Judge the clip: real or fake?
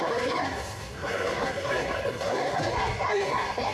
fake